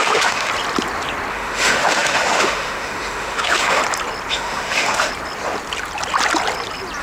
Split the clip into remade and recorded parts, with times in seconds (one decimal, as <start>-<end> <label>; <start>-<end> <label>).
0.0-0.5 remade; 0.5-1.3 recorded; 1.3-3.8 remade; 3.8-4.3 recorded; 4.3-5.1 remade; 5.1-7.0 recorded